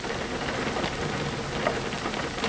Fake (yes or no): no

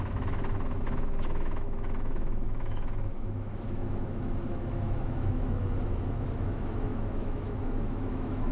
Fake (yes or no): yes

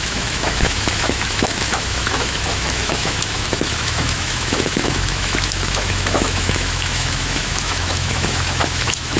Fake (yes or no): yes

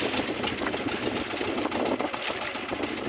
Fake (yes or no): no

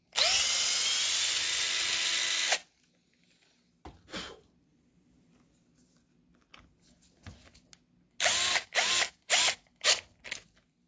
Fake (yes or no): no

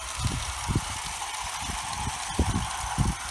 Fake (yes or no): no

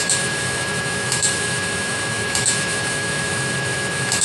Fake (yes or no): yes